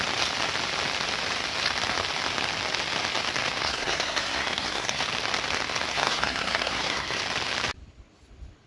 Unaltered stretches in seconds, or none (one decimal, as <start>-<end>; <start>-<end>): 0.0-3.6; 5.0-5.9; 7.2-8.7